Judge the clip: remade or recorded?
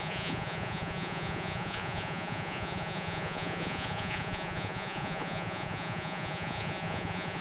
remade